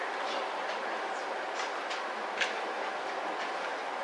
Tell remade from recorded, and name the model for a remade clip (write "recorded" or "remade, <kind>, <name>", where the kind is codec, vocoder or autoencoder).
recorded